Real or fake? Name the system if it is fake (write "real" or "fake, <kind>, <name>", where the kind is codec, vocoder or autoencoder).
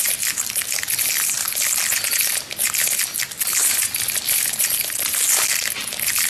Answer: real